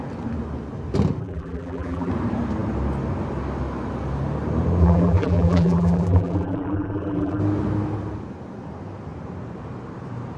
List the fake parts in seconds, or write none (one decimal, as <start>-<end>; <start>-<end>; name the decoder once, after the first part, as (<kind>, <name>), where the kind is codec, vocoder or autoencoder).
1.2-2.1 (vocoder, BigVGAN v2); 4.8-7.4